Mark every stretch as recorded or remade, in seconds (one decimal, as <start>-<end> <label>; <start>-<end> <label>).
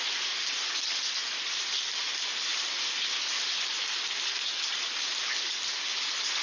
0.0-6.4 recorded